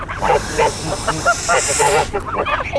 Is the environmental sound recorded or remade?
recorded